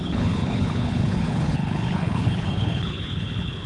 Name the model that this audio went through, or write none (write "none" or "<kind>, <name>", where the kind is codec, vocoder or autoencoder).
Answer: codec, HILCodec